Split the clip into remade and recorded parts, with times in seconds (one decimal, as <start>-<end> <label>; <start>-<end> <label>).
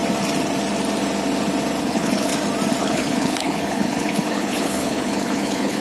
0.0-1.8 recorded; 1.8-2.3 remade; 2.3-2.8 recorded; 2.8-5.8 remade